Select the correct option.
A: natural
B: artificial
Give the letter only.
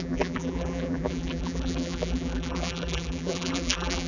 B